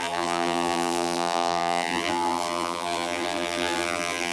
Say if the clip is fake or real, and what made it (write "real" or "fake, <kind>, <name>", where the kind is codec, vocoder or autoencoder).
fake, vocoder, BigVGAN v2